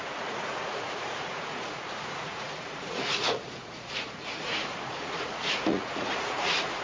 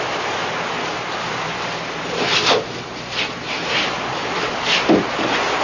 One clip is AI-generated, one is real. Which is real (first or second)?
second